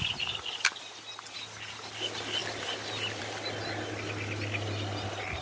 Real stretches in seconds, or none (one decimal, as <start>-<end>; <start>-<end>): 0.0-5.4